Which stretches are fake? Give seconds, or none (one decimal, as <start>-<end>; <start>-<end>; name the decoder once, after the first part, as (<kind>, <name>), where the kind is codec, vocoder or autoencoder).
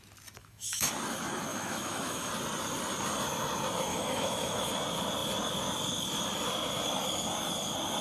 0.4-0.9 (autoencoder, DAC-VAE); 1.5-2.3; 3.9-4.7